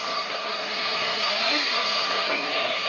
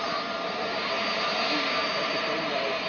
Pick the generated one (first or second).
first